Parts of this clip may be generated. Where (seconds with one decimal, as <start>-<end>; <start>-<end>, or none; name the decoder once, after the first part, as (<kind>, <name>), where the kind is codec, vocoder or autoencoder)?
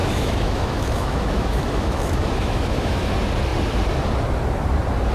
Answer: 0.0-3.1 (autoencoder, DAC-VAE)